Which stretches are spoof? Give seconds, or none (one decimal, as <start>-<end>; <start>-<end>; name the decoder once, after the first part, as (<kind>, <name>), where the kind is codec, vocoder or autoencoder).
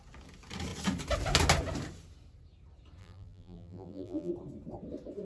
3.0-4.3 (vocoder, BigVGAN v2)